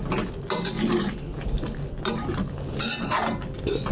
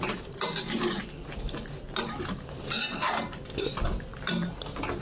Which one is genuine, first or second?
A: first